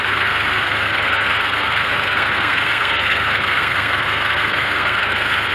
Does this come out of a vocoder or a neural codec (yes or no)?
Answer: yes